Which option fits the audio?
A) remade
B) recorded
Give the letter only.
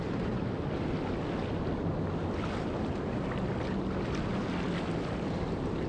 B